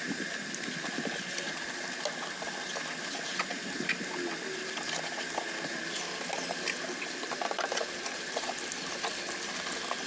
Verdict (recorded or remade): recorded